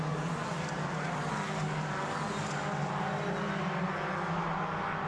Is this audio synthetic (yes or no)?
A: no